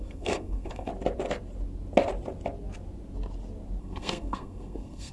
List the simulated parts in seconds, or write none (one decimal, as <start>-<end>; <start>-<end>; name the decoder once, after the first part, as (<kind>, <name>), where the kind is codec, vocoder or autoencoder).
0.0-0.9 (codec, SNAC); 3.8-5.1